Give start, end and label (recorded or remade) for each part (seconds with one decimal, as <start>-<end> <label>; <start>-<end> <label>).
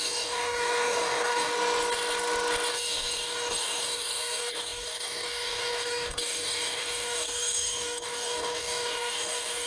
0.0-1.5 remade; 1.5-2.7 recorded; 2.7-9.7 remade